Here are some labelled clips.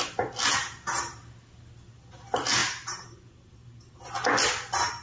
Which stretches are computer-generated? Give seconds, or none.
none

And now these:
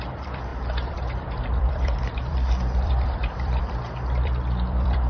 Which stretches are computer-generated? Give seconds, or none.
0.0-5.1 (vocoder, BigVGAN v2)

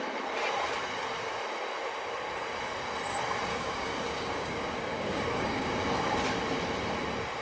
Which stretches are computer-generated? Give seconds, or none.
3.5-5.8 (codec, DAC)

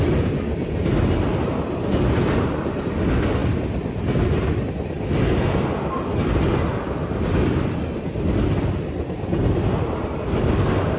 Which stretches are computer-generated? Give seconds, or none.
none

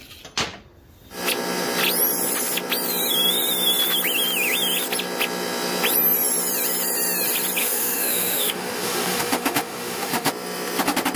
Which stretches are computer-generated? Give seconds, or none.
7.6-10.3 (autoencoder, DAC-VAE)